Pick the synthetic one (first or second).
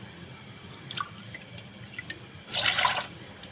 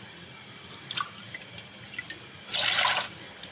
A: first